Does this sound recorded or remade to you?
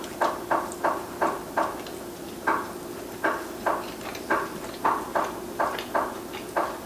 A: recorded